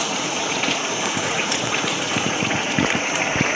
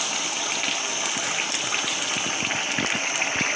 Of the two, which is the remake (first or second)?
first